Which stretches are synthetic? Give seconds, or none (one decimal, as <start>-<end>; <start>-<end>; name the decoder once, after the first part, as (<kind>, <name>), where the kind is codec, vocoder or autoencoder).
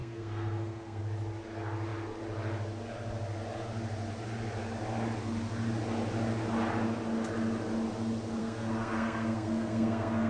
0.0-1.0 (codec, SNAC); 8.4-10.3